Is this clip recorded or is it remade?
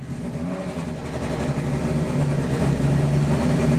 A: recorded